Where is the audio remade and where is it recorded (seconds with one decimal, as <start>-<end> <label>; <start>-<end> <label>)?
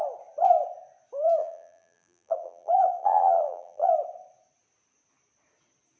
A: 0.0-1.4 recorded; 1.4-3.9 remade; 3.9-6.0 recorded